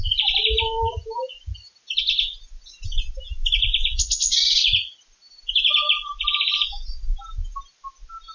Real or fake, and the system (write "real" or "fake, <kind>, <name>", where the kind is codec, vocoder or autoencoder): real